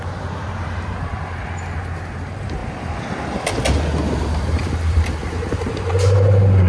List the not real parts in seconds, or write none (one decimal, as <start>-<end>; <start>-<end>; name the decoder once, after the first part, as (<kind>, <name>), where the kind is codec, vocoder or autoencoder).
0.0-2.6 (vocoder, BigVGAN v2); 4.2-5.2; 5.9-6.7